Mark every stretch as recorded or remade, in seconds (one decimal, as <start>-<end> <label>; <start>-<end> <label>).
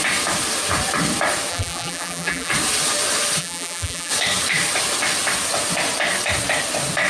0.0-1.5 recorded; 1.5-2.5 remade; 2.5-3.4 recorded; 3.4-4.1 remade; 4.1-7.1 recorded